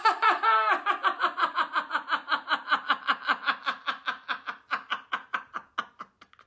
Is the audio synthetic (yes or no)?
no